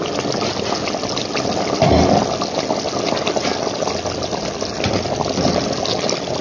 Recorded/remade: recorded